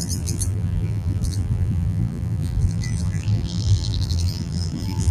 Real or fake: fake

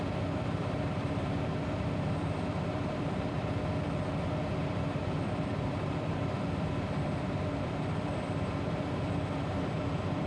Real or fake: fake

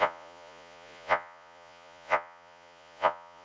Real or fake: fake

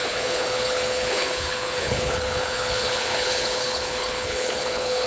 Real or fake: fake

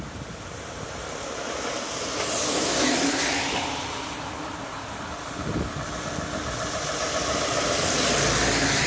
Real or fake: real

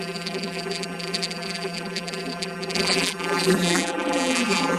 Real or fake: fake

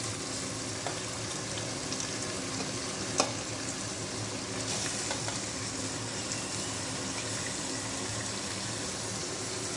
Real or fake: real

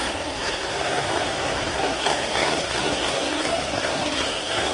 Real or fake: fake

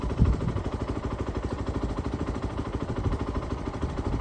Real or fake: fake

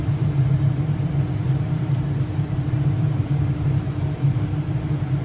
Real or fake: fake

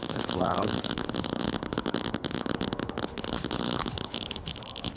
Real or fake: fake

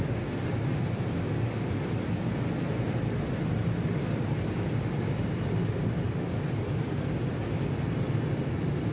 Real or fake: real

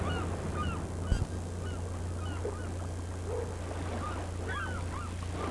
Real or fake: real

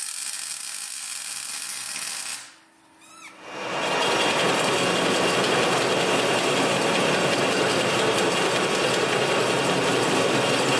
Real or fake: real